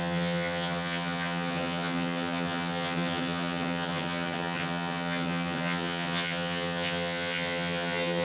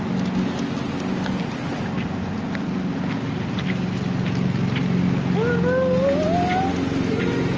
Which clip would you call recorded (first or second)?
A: second